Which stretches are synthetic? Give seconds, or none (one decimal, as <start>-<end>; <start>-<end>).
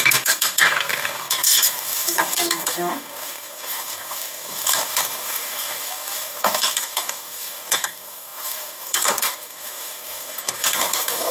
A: 0.0-11.3